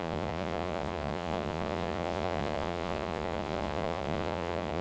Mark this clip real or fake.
fake